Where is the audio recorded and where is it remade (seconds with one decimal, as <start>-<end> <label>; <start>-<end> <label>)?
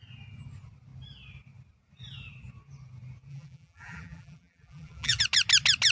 0.0-3.3 recorded; 3.3-5.2 remade; 5.2-5.9 recorded